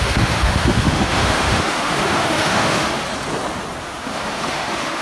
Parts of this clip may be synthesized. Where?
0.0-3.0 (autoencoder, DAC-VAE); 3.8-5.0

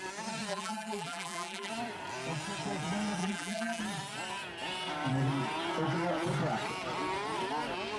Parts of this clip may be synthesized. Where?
0.5-1.7 (vocoder, BigVGAN v2); 3.2-3.8

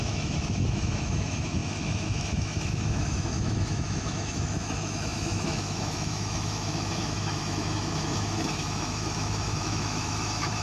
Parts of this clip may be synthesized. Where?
0.0-10.6 (autoencoder, DAC-VAE)

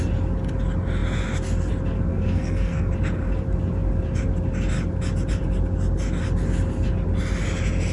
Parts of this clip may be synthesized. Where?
2.1-2.9 (codec, SNAC)

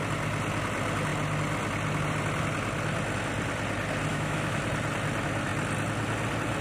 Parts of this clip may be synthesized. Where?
4.1-4.6 (autoencoder, DAC-VAE)

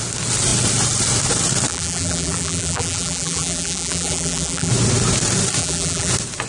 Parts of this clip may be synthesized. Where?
1.7-4.7 (vocoder, BigVGAN v2); 5.6-6.1